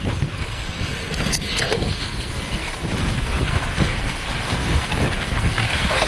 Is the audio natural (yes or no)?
no